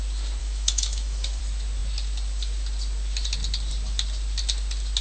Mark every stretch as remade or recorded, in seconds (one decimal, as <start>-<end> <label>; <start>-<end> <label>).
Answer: 0.0-0.4 recorded; 0.4-1.4 remade; 1.4-5.0 recorded